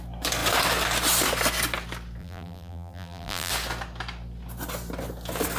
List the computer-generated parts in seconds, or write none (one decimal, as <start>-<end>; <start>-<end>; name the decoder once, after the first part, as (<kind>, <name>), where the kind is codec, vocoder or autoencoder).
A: 2.2-3.5 (vocoder, BigVGAN v2)